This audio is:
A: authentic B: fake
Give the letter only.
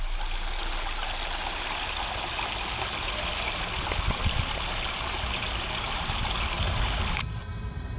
A